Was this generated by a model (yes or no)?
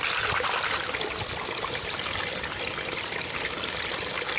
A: no